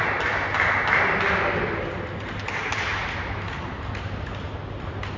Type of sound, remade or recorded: recorded